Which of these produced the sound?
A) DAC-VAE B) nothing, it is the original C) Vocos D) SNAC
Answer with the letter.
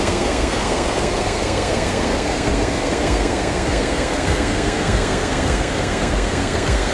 D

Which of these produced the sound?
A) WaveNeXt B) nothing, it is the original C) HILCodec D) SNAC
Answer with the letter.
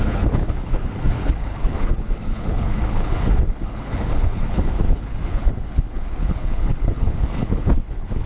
C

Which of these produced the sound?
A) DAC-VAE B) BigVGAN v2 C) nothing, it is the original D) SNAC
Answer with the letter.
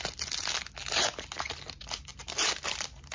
C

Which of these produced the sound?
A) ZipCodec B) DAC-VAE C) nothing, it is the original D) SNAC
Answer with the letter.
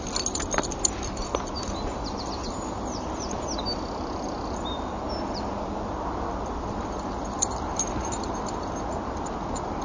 C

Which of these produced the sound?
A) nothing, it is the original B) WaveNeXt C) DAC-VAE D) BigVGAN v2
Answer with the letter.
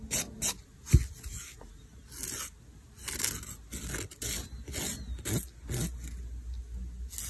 A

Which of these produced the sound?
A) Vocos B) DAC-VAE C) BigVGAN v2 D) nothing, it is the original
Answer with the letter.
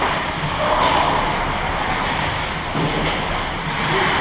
D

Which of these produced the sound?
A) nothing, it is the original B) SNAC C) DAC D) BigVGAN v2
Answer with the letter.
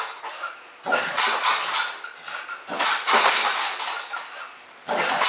A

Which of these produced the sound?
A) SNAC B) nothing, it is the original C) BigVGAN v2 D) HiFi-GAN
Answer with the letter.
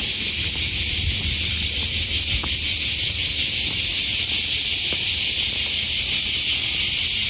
C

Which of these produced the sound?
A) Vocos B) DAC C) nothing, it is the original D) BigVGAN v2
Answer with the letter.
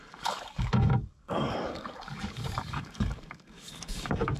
B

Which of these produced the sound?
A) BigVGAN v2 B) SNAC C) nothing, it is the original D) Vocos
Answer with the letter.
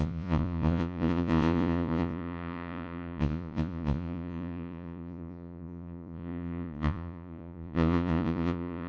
D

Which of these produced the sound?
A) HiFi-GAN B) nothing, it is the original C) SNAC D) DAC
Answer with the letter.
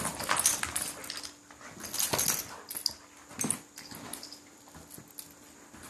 B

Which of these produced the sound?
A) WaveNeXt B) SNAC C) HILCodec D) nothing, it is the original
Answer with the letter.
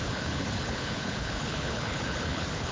C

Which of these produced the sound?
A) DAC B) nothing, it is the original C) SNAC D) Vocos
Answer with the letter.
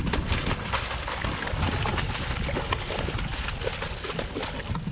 B